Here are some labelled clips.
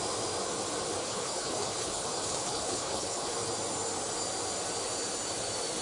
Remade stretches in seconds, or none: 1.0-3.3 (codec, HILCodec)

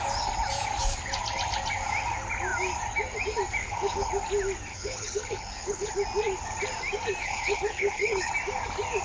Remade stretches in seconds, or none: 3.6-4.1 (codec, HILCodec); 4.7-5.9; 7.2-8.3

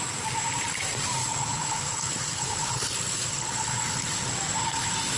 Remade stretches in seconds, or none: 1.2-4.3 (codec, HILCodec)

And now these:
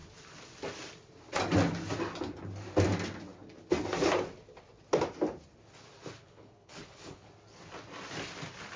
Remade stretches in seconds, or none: 6.2-7.3 (codec, HILCodec)